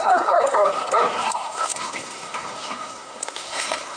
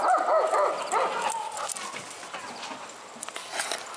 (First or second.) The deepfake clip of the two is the first